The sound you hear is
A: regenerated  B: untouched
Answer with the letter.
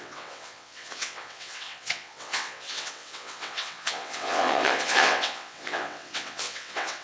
A